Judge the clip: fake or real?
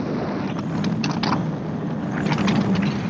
real